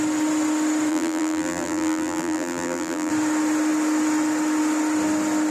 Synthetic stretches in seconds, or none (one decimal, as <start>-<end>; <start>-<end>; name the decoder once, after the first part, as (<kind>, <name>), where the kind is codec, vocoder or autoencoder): 0.9-3.1 (vocoder, BigVGAN v2)